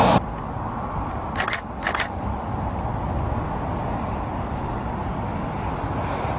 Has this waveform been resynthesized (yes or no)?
no